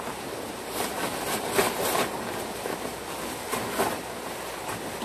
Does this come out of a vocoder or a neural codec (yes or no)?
no